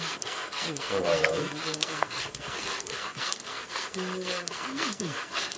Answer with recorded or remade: remade